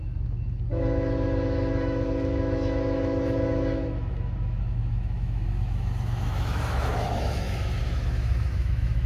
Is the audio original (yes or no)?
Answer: no